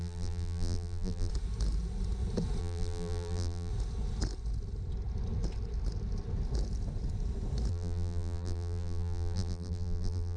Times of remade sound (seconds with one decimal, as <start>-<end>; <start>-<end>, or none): 0.0-1.3; 2.6-3.7; 7.7-10.4